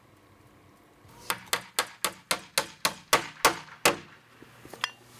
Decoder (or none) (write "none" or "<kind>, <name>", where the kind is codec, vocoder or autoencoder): none